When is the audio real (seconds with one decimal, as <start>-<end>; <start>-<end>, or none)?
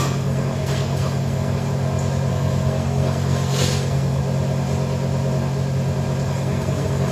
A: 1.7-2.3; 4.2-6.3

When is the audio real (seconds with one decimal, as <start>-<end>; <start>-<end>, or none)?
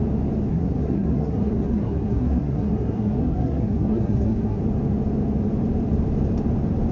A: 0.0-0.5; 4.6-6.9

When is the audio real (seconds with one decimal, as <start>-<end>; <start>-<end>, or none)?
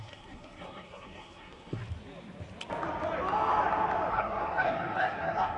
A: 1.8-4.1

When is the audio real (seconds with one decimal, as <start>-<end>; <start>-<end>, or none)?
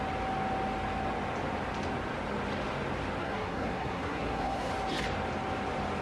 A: 0.0-3.2; 4.7-6.0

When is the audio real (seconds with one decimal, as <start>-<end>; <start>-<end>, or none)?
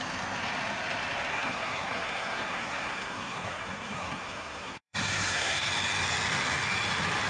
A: 0.0-1.3; 5.7-7.3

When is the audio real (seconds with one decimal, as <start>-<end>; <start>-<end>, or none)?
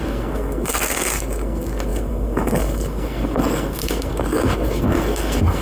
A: none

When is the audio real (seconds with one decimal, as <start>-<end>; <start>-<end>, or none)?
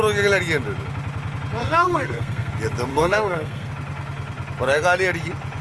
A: 0.0-1.6; 2.5-2.9; 3.7-5.6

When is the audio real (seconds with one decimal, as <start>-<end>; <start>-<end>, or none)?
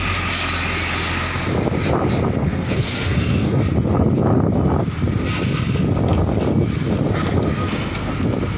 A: 0.0-2.4; 3.6-7.6; 8.1-8.6